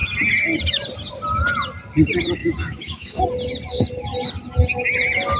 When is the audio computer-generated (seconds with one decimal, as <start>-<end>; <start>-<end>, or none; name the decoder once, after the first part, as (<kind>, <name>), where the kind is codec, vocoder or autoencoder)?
2.4-3.2 (autoencoder, DAC-VAE)

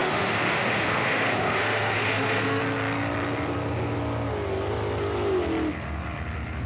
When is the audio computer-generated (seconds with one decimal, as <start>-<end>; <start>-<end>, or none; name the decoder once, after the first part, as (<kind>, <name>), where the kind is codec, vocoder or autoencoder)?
0.0-2.6 (autoencoder, DAC-VAE)

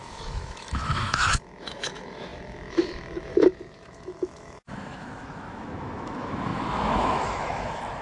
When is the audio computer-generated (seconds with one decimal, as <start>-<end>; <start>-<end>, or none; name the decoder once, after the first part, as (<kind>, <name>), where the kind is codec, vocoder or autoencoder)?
0.0-8.0 (autoencoder, DAC-VAE)

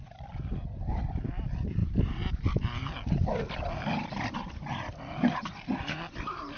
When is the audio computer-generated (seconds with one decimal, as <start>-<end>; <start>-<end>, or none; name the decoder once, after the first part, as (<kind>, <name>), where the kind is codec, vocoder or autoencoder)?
none

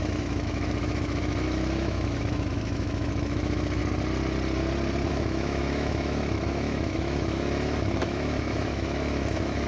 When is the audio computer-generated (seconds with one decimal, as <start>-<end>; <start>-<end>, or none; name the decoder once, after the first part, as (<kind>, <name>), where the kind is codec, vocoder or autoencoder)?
0.0-3.8 (autoencoder, DAC-VAE); 5.1-9.7

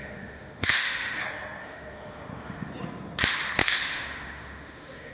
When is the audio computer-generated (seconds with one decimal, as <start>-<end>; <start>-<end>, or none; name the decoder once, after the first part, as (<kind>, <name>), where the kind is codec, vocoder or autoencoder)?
0.0-1.2 (autoencoder, DAC-VAE); 1.6-2.7; 3.6-5.1

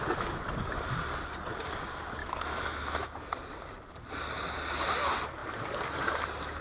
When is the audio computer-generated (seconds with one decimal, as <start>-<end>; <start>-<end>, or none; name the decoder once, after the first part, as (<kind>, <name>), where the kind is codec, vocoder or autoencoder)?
2.2-3.3 (autoencoder, DAC-VAE)